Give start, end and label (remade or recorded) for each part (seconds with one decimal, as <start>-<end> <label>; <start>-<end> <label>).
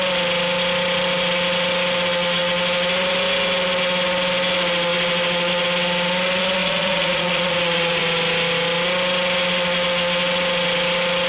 0.0-6.6 recorded; 6.6-8.0 remade; 8.0-11.3 recorded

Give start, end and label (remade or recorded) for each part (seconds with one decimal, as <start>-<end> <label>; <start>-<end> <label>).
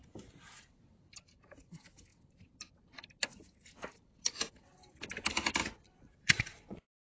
0.0-5.6 recorded; 5.6-6.8 remade; 6.8-7.2 recorded